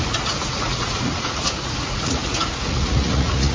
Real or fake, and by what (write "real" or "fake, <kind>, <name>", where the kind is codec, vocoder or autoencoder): fake, vocoder, Vocos